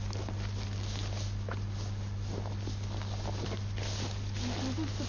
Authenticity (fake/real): real